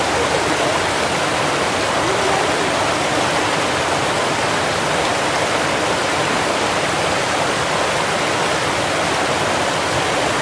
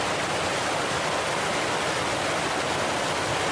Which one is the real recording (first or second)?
second